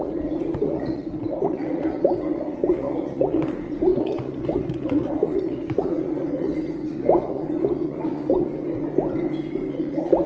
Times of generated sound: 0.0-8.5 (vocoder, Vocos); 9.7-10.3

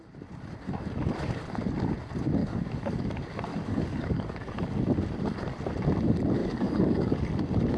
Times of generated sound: 2.4-3.1 (codec, DAC); 3.5-4.5; 6.4-7.2

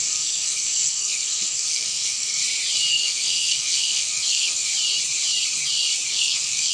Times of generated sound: 0.0-2.4 (codec, SNAC); 2.9-4.7; 6.1-6.7

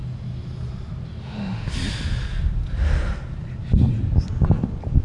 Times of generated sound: 1.2-1.7 (autoencoder, DAC-VAE)

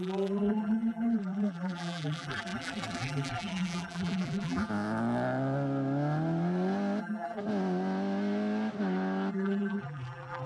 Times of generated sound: 0.0-4.7 (vocoder, BigVGAN v2); 7.0-7.4; 9.3-10.5